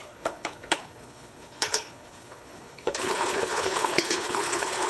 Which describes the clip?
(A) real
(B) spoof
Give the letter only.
B